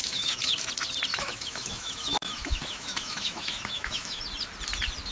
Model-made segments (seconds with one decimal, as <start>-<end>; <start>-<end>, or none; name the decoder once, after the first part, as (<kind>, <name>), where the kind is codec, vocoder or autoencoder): 0.0-0.7 (autoencoder, DAC-VAE); 1.1-4.2